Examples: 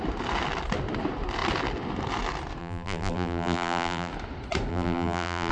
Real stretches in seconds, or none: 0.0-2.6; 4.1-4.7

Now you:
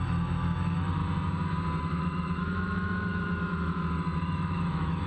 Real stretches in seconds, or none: 1.0-1.8